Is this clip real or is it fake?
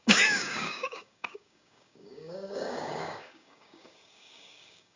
fake